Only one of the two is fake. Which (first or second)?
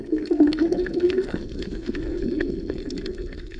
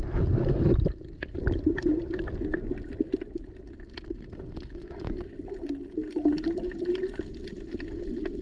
first